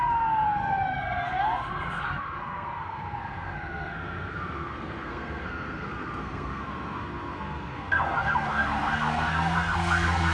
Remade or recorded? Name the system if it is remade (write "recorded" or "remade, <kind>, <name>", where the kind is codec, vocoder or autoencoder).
remade, codec, SNAC